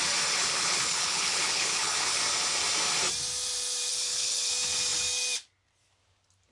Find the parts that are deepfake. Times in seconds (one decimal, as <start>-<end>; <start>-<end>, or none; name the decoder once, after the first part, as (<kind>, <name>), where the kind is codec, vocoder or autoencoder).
0.4-2.2 (codec, HILCodec); 3.9-4.5